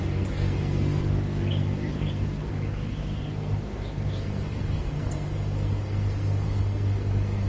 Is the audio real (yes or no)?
no